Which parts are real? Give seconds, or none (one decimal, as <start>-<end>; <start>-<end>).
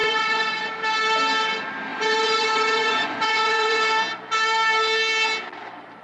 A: 0.7-1.9; 3.8-6.0